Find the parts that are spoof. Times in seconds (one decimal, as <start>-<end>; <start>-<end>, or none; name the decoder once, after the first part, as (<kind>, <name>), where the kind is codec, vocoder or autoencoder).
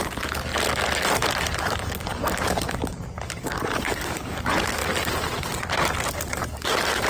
0.0-0.5 (codec, DAC); 1.6-4.8; 6.4-7.1